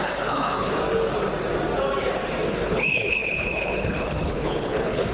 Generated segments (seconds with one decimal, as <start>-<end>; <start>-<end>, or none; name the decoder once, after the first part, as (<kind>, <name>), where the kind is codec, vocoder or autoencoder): 0.0-0.8 (codec, HILCodec); 2.5-5.1